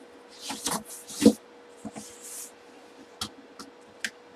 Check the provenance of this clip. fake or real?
real